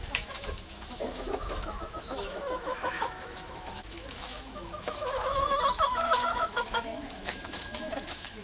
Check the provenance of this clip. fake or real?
fake